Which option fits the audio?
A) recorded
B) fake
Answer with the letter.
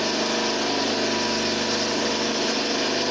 A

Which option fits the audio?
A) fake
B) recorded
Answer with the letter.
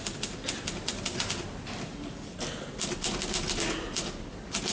B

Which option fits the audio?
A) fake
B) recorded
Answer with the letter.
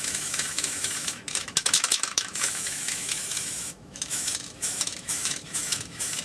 A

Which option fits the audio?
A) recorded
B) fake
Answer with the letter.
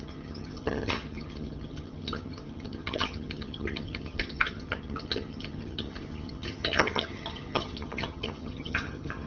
B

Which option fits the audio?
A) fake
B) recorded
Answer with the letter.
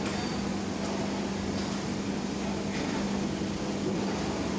B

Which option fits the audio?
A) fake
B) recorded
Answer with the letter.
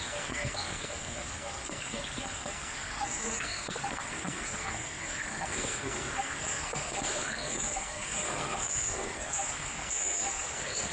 A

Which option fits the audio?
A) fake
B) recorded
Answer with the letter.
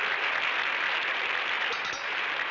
B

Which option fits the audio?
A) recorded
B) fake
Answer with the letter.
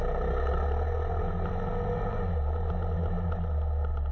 A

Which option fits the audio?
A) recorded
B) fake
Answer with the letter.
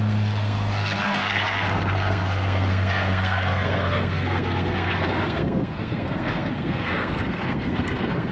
B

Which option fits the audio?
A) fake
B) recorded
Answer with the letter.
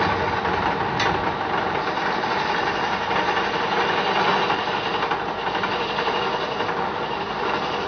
B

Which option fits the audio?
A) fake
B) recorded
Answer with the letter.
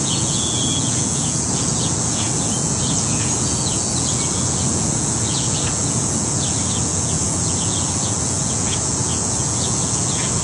A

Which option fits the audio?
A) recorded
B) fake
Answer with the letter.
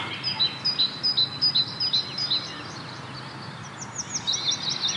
A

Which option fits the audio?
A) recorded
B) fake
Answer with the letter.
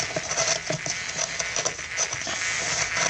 A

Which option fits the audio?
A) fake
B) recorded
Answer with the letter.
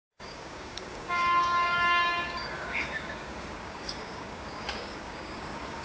A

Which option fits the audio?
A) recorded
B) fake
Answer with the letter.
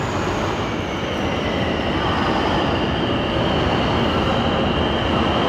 A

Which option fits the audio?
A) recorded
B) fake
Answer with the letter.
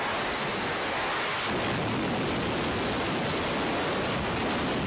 A